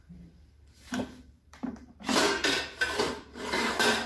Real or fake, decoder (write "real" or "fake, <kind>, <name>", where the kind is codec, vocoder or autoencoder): fake, vocoder, BigVGAN v2